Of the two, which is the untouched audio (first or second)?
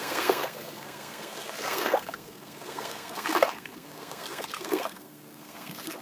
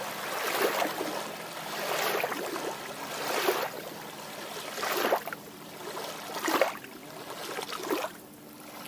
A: second